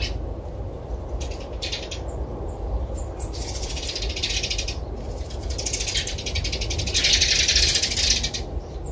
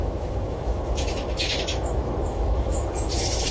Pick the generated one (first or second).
second